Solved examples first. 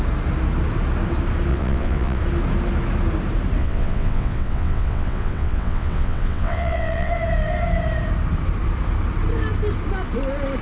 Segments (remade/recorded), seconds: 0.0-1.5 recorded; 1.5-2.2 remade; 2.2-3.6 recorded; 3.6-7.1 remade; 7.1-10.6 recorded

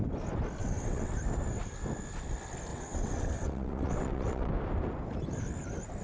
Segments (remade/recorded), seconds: 0.0-0.6 recorded; 0.6-1.1 remade; 1.1-2.7 recorded; 2.7-4.5 remade; 4.5-6.0 recorded

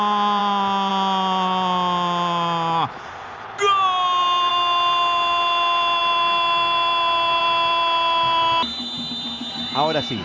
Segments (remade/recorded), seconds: 0.0-10.2 recorded

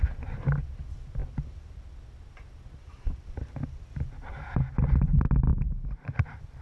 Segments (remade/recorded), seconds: 0.0-5.5 recorded; 5.5-6.6 remade

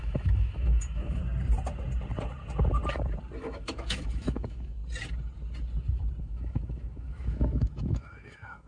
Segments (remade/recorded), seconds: 0.0-1.2 remade; 1.2-3.4 recorded; 3.4-4.8 remade; 4.8-6.2 recorded; 6.2-8.7 remade

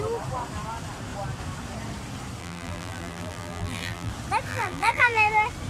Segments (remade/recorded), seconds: 0.0-2.4 recorded; 2.4-4.1 remade; 4.1-4.5 recorded; 4.5-5.3 remade; 5.3-5.7 recorded